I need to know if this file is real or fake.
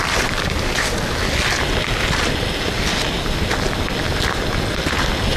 real